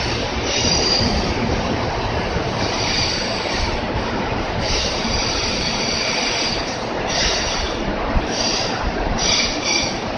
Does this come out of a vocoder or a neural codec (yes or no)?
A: yes